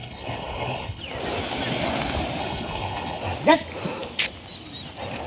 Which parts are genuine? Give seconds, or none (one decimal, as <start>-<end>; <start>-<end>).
1.0-2.4; 3.2-5.3